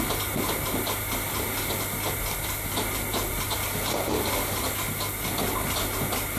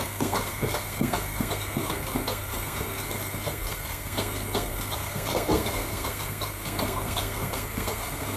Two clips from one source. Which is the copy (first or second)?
second